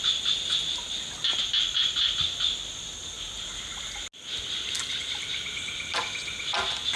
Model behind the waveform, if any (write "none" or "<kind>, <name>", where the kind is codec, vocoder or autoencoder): none